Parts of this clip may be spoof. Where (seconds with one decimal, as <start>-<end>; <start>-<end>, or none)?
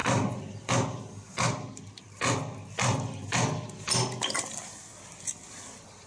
none